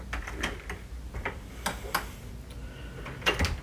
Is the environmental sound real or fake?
real